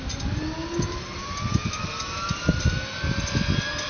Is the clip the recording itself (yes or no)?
yes